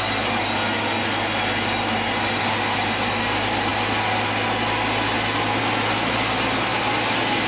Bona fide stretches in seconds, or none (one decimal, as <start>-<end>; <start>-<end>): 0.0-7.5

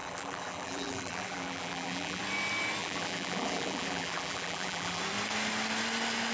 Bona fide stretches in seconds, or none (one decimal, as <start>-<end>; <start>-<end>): 2.2-2.8; 5.0-6.3

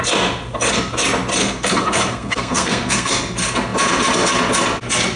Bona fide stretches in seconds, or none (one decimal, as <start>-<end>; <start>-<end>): 0.0-1.4; 3.1-5.2

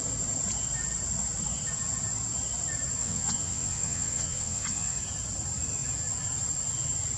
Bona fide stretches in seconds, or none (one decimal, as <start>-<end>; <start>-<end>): 0.0-3.0; 5.0-7.2

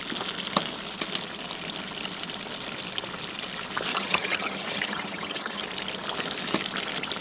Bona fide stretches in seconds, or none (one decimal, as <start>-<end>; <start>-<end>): 0.0-3.9; 5.6-7.2